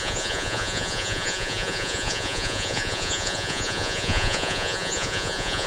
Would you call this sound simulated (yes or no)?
yes